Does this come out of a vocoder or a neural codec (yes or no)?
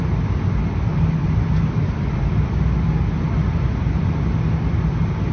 no